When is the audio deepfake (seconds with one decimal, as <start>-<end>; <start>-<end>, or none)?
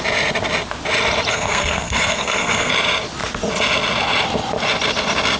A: 1.3-2.7